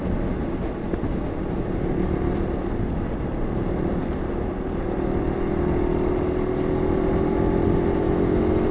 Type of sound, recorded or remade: recorded